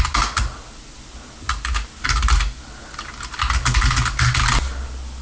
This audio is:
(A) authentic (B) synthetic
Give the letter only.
A